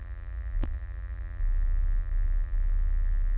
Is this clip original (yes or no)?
no